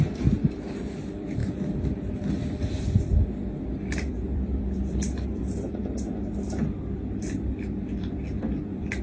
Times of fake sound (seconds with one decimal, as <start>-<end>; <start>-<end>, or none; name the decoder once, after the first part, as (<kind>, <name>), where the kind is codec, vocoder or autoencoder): 0.0-5.8 (vocoder, BigVGAN v2); 8.6-9.0